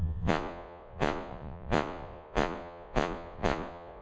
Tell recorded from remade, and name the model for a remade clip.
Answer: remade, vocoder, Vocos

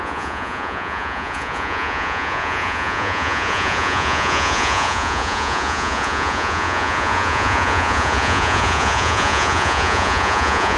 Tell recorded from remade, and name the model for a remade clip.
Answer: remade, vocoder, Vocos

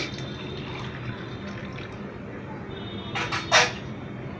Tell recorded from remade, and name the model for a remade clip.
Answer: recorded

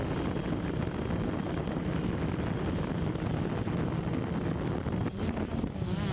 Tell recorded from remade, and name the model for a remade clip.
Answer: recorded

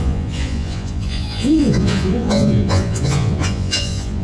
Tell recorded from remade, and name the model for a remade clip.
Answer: remade, vocoder, Vocos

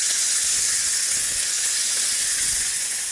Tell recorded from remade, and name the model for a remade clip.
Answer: remade, vocoder, Vocos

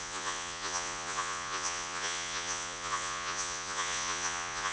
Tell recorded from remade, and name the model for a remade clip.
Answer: remade, vocoder, Vocos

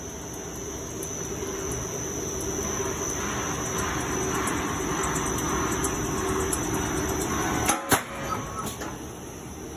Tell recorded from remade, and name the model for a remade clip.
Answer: recorded